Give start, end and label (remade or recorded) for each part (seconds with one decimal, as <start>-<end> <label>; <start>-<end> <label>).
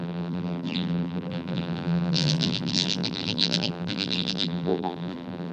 0.0-5.5 remade